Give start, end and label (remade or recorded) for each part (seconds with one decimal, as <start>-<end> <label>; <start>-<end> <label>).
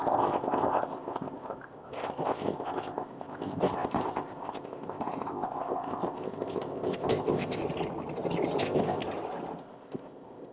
0.0-7.6 remade; 7.6-8.6 recorded; 8.6-9.0 remade; 9.0-9.6 recorded; 9.6-10.5 remade